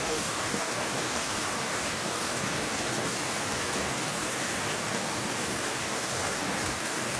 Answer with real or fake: fake